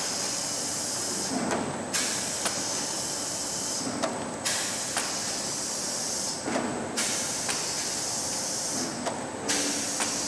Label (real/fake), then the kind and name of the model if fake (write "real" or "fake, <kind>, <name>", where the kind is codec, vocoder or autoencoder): real